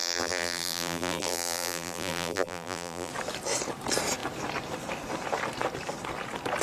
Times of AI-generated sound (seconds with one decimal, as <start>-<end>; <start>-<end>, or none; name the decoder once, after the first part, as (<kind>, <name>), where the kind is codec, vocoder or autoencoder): 0.0-3.1 (vocoder, BigVGAN v2)